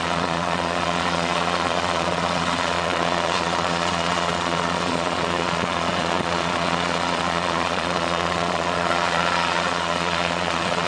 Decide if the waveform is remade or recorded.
remade